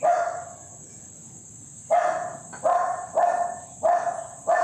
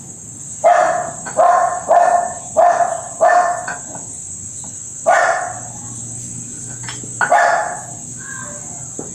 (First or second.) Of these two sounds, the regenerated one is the first